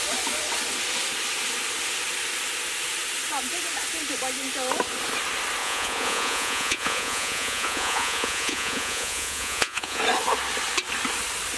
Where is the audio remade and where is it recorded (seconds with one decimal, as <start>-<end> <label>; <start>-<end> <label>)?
0.0-5.6 recorded; 5.6-10.0 remade; 10.0-11.6 recorded